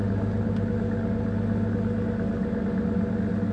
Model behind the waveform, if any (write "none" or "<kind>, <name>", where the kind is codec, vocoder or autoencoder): none